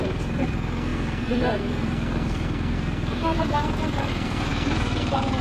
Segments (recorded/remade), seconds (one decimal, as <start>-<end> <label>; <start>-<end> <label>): 0.0-5.4 remade

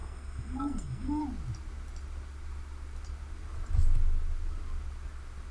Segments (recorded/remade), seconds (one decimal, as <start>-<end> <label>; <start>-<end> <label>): 0.0-1.2 remade; 1.2-5.5 recorded

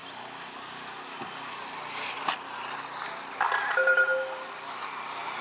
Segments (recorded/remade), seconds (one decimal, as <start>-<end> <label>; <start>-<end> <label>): 0.0-5.4 recorded

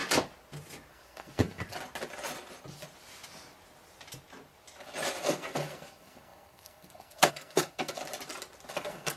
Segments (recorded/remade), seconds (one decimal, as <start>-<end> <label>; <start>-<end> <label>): 0.0-0.9 recorded; 0.9-1.6 remade; 1.6-5.2 recorded; 5.2-8.0 remade; 8.0-8.7 recorded; 8.7-9.2 remade

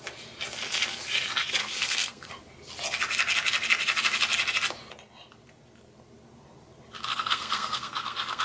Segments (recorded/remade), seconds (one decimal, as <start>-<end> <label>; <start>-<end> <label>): 0.0-1.6 recorded; 1.6-2.3 remade; 2.3-7.1 recorded; 7.1-8.4 remade

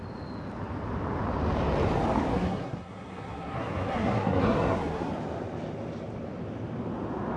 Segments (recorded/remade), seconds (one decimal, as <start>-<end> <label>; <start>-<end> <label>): 0.0-2.3 recorded; 2.3-5.1 remade; 5.1-7.4 recorded